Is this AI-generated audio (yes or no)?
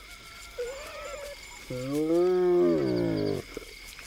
no